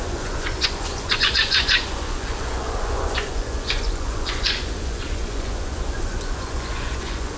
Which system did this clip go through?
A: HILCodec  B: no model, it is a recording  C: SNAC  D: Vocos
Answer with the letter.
D